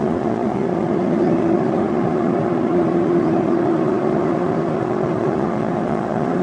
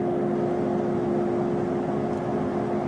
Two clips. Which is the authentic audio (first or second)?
second